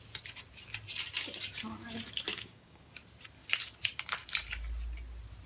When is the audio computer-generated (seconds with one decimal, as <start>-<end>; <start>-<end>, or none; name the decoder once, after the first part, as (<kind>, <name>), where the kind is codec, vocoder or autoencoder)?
2.3-2.9 (codec, DAC)

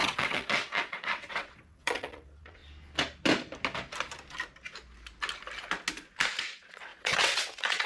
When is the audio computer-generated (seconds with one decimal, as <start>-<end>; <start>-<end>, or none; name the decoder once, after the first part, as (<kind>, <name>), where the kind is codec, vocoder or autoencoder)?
0.0-2.6 (vocoder, WaveNeXt); 6.4-7.9

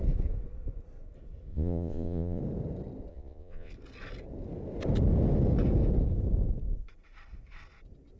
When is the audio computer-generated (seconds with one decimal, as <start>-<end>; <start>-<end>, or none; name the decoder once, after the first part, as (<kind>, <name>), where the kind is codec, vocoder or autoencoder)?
1.5-2.4 (vocoder, Vocos); 3.1-3.7

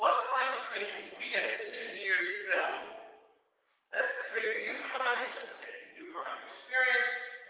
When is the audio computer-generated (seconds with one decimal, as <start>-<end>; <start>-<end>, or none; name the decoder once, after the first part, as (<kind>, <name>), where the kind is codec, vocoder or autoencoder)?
0.0-6.5 (codec, SNAC)

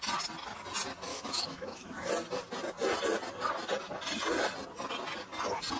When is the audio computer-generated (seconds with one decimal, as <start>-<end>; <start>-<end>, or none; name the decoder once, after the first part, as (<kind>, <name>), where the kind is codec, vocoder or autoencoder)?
1.1-2.1 (autoencoder, DAC-VAE)